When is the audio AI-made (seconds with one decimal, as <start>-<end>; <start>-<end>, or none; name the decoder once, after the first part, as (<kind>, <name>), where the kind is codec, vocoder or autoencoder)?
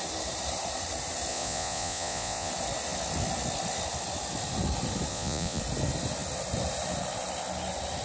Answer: 1.3-2.5 (vocoder, Vocos); 5.1-5.6